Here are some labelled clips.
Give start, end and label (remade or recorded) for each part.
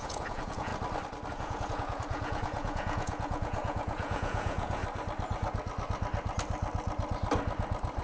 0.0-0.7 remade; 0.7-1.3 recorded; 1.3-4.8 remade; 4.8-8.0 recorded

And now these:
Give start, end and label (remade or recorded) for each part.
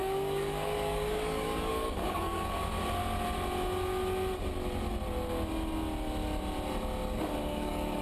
0.0-2.6 remade; 2.6-7.4 recorded; 7.4-8.0 remade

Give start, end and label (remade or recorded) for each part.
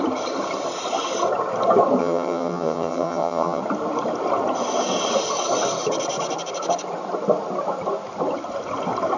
0.0-2.0 recorded; 2.0-3.6 remade; 3.6-9.2 recorded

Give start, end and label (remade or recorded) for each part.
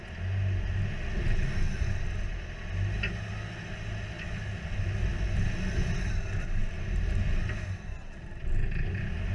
0.0-9.3 recorded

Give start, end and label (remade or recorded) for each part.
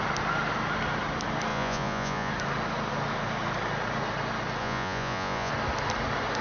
0.0-1.5 recorded; 1.5-2.3 remade; 2.3-4.6 recorded; 4.6-5.5 remade; 5.5-6.4 recorded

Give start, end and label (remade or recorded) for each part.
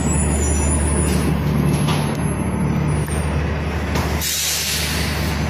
0.0-5.5 recorded